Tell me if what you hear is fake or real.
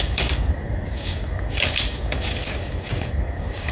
fake